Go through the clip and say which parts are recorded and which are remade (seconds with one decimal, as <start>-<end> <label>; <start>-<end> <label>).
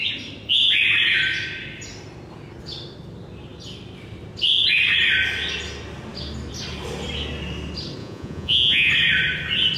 0.0-8.0 recorded; 8.0-8.9 remade; 8.9-9.8 recorded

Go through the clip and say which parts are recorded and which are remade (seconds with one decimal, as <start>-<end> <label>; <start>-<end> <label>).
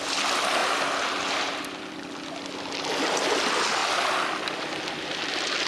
0.0-5.7 recorded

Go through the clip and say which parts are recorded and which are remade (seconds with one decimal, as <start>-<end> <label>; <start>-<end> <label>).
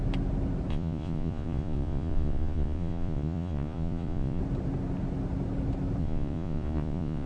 0.0-0.7 recorded; 0.7-4.4 remade; 4.4-6.0 recorded; 6.0-7.3 remade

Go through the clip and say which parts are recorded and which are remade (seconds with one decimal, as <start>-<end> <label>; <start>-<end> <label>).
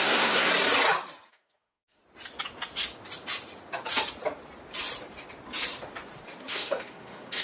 0.0-0.5 remade; 0.5-1.3 recorded; 1.3-2.0 remade; 2.0-6.4 recorded; 6.4-7.4 remade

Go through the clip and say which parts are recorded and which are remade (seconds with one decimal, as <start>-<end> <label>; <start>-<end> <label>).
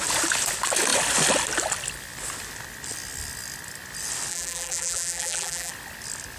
0.0-4.3 recorded; 4.3-5.7 remade; 5.7-6.4 recorded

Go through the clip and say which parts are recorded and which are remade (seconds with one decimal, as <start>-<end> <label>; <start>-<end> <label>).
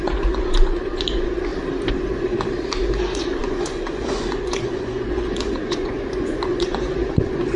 0.0-1.5 remade; 1.5-3.0 recorded; 3.0-7.6 remade